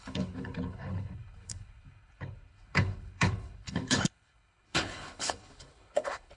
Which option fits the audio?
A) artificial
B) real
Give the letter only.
A